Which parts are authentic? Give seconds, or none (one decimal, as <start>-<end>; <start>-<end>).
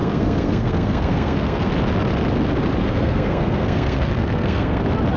1.7-2.8; 4.8-5.2